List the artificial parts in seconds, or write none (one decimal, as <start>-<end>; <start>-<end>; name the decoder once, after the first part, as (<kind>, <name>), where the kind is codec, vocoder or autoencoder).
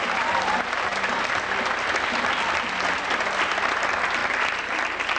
4.2-5.2 (vocoder, BigVGAN v2)